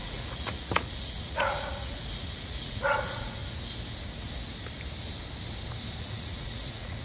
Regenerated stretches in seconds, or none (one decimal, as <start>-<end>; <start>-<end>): 0.0-3.4; 6.0-7.0

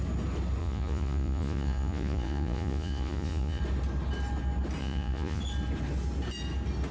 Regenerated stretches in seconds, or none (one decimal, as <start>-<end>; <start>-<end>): 0.6-3.6; 4.8-5.4

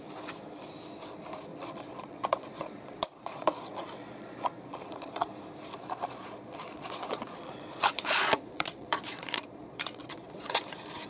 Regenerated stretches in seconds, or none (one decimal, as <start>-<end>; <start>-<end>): 1.5-5.3; 5.8-10.6

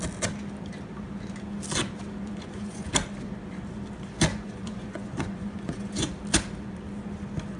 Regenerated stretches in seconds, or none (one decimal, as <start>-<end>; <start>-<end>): 2.2-2.9; 4.3-6.1

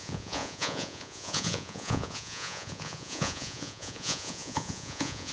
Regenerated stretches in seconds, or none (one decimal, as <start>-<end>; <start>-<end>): 0.0-5.3

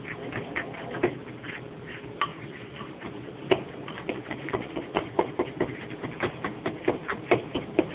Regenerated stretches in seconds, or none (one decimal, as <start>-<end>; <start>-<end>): 2.3-5.3

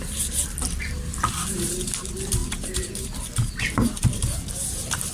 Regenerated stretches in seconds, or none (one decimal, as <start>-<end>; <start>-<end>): none